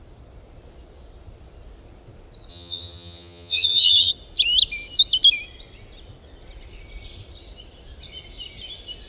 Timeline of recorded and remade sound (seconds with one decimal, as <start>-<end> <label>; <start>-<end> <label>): 0.0-2.5 recorded; 2.5-4.1 remade; 4.1-9.1 recorded